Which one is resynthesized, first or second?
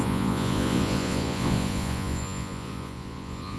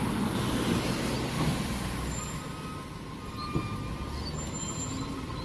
first